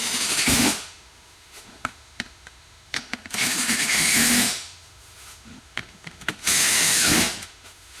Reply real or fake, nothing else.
fake